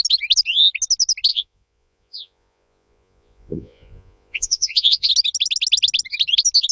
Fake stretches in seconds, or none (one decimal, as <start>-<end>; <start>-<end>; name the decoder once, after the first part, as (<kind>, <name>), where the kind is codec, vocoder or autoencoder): 1.3-5.1 (vocoder, Vocos)